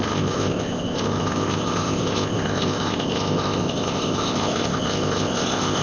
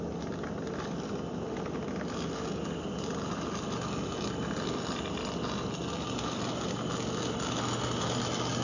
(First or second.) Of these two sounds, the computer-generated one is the first